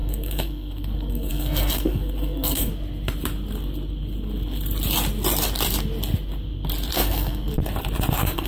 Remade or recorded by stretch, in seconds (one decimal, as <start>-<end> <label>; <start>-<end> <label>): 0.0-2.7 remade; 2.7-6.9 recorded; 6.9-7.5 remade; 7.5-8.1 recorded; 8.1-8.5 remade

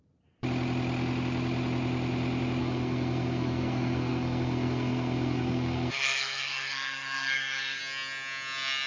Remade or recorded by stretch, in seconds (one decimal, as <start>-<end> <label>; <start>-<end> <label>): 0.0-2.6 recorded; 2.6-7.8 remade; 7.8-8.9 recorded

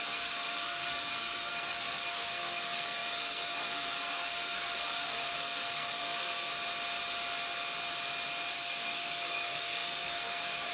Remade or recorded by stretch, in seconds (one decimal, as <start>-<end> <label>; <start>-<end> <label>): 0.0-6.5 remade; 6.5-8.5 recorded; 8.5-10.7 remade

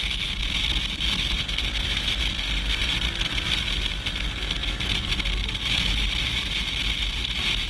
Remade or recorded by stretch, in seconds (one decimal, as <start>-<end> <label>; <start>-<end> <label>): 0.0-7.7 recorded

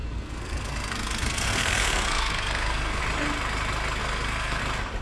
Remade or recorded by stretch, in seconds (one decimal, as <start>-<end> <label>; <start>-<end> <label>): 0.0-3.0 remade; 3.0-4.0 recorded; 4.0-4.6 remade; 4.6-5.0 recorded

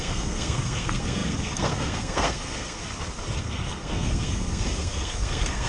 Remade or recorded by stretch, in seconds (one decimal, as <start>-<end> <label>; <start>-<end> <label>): 0.0-2.8 remade; 2.8-3.4 recorded; 3.4-5.7 remade

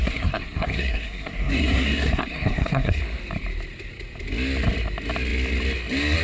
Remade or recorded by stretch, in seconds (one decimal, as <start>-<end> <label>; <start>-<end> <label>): 0.0-3.0 remade; 3.0-6.2 recorded

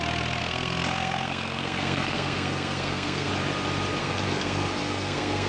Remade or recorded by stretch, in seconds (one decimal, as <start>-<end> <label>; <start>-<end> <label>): 0.0-0.4 recorded; 0.4-3.3 remade; 3.3-4.0 recorded; 4.0-5.5 remade